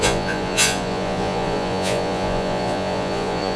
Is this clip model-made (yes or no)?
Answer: yes